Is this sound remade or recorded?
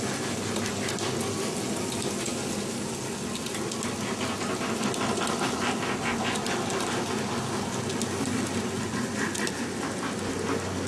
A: recorded